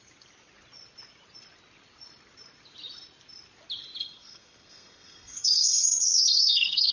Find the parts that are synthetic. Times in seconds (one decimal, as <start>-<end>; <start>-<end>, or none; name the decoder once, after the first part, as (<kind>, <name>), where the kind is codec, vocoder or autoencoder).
4.0-6.9 (codec, SNAC)